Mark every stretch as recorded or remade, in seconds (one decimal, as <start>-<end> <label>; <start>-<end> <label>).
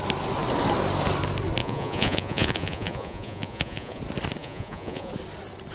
0.0-1.6 recorded; 1.6-4.0 remade; 4.0-4.4 recorded; 4.4-5.1 remade; 5.1-5.7 recorded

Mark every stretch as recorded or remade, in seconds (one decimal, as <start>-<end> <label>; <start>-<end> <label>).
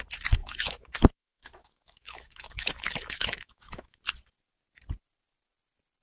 0.0-0.4 recorded; 0.4-4.0 remade; 4.0-6.0 recorded